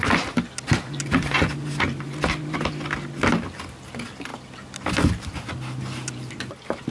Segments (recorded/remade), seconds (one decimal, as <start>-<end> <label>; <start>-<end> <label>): 0.0-6.9 recorded